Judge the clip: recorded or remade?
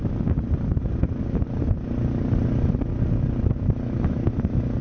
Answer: recorded